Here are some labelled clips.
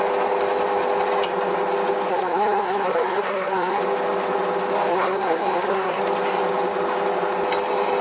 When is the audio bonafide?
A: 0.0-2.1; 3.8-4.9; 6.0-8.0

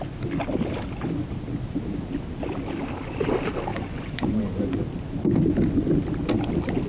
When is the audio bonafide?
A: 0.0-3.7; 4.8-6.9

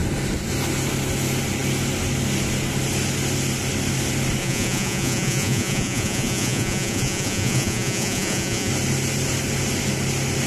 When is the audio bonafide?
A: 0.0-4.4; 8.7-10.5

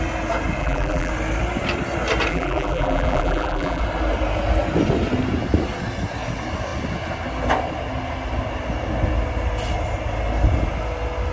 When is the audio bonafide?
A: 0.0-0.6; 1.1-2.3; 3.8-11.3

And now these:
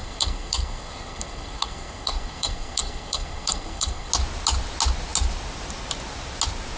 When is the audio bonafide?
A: 4.1-6.8